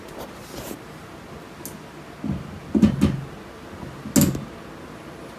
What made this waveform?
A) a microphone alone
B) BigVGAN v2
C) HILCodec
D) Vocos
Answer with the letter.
A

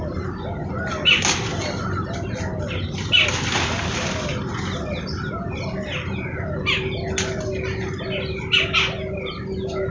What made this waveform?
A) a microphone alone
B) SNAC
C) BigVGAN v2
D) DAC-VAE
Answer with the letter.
A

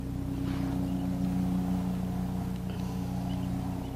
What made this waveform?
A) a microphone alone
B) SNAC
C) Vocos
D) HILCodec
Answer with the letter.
A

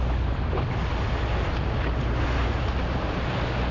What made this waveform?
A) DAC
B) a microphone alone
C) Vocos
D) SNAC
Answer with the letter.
B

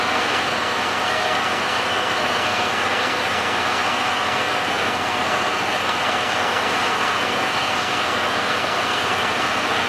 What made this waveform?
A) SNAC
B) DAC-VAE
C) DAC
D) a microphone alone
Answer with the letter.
A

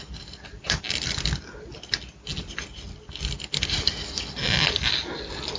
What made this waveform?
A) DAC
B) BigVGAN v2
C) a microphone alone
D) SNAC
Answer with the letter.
C